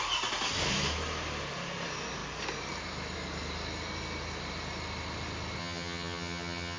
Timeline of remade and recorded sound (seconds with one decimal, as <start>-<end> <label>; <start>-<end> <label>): 0.0-5.6 recorded; 5.6-6.8 remade